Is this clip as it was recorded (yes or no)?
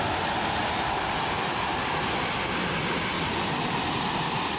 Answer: yes